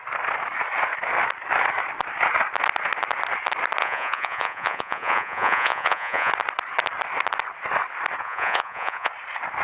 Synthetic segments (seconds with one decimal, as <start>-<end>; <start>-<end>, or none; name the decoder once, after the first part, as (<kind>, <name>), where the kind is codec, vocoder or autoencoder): 3.8-6.3 (vocoder, Vocos); 8.2-9.1